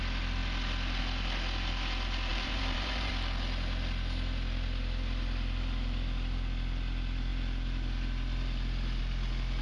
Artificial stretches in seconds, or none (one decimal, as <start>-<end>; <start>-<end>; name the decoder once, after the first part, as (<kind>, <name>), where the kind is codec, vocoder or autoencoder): 2.3-3.1 (vocoder, BigVGAN v2)